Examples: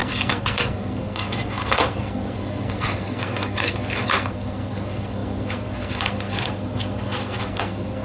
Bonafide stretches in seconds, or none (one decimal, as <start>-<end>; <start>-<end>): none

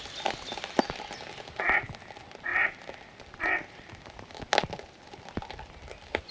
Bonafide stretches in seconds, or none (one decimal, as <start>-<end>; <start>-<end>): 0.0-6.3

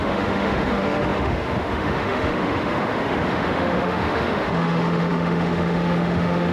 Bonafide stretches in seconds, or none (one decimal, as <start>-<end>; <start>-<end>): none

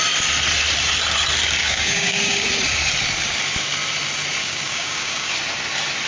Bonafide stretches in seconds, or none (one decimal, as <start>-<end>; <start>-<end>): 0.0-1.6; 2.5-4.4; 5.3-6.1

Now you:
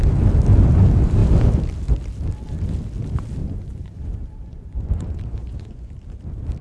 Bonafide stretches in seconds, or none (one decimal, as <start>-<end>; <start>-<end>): 0.0-3.4; 5.9-6.6

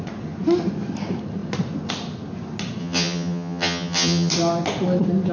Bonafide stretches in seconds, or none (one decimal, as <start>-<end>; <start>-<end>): 0.0-2.8; 4.3-5.3